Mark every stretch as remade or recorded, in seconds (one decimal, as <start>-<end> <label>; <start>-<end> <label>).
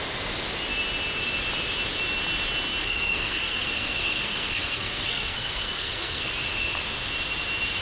0.0-2.8 recorded; 2.8-6.3 remade; 6.3-7.8 recorded